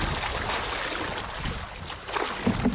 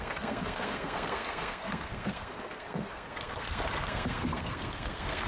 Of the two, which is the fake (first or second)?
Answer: second